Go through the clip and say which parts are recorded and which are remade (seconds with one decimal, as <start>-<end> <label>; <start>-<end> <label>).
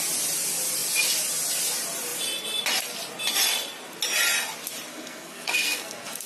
0.0-4.9 recorded; 4.9-6.3 remade